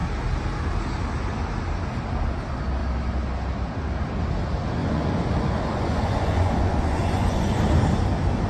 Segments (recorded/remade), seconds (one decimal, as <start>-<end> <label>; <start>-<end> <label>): 0.0-4.8 recorded; 4.8-7.6 remade; 7.6-8.5 recorded

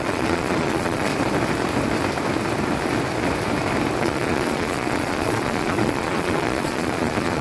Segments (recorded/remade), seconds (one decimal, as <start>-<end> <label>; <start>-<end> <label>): 0.0-1.1 remade; 1.1-4.0 recorded; 4.0-7.4 remade

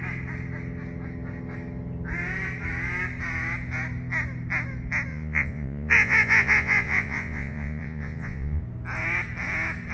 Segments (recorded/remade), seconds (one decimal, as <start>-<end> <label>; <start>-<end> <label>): 0.0-5.1 recorded; 5.1-8.6 remade; 8.6-9.9 recorded